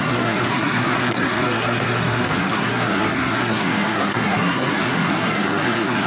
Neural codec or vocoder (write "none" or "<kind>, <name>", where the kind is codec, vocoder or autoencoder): codec, SNAC